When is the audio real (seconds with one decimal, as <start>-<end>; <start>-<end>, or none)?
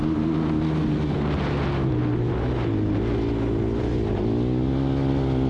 0.0-5.5